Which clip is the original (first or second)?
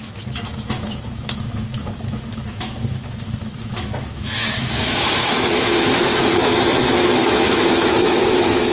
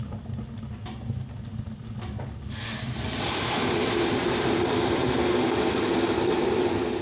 second